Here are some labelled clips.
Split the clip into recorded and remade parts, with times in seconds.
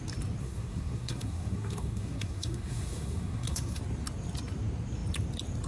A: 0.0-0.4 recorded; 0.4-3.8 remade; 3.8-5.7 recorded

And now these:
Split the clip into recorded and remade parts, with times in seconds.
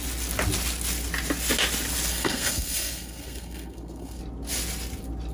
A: 0.0-2.1 recorded; 2.1-4.2 remade; 4.2-5.3 recorded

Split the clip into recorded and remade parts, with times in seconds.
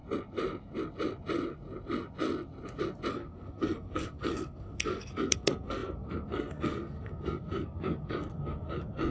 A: 0.0-3.1 recorded; 3.1-9.1 remade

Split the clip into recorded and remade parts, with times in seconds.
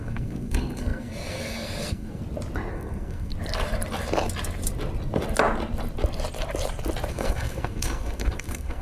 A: 0.0-2.2 remade; 2.2-2.7 recorded; 2.7-3.3 remade; 3.3-7.1 recorded; 7.1-8.8 remade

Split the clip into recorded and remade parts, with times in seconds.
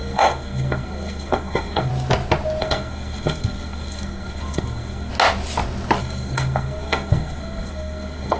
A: 0.0-1.9 remade; 1.9-2.6 recorded; 2.6-5.1 remade; 5.1-6.0 recorded; 6.0-8.4 remade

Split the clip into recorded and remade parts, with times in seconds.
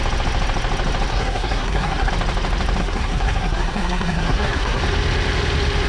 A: 0.0-1.1 recorded; 1.1-2.1 remade; 2.1-2.8 recorded; 2.8-4.8 remade; 4.8-5.9 recorded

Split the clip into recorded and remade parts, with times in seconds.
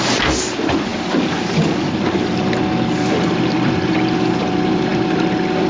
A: 0.0-5.7 recorded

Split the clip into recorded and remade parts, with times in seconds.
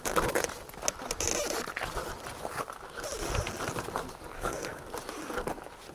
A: 0.0-4.3 recorded; 4.3-4.8 remade; 4.8-5.9 recorded